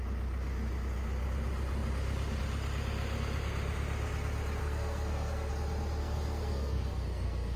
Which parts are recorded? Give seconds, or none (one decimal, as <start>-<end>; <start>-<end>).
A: 0.0-4.6; 5.5-6.0